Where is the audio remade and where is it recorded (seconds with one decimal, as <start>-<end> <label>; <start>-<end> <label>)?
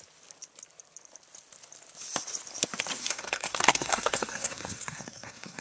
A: 0.0-3.0 recorded; 3.0-5.6 remade